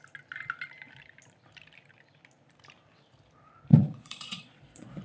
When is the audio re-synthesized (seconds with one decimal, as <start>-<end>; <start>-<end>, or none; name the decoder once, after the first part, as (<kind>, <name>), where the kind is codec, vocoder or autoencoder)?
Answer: 3.7-5.0 (vocoder, Vocos)